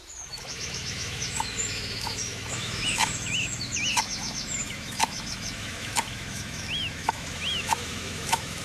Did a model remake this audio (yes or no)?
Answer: yes